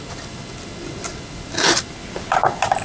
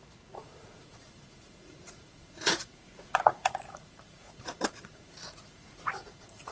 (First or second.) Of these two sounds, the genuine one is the first